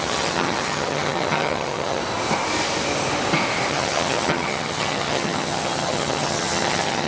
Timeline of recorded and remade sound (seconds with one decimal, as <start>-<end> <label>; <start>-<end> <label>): 0.0-2.0 remade; 2.0-3.7 recorded; 3.7-7.1 remade

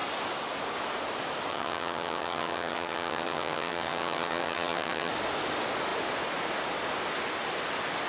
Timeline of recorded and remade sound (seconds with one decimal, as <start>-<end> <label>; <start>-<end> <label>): 0.0-1.5 recorded; 1.5-5.1 remade; 5.1-8.1 recorded

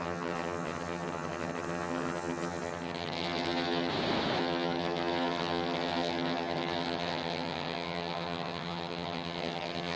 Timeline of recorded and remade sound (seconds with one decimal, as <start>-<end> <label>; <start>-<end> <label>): 0.0-3.9 remade; 3.9-4.4 recorded; 4.4-10.0 remade